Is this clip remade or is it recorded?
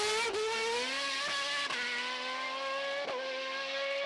recorded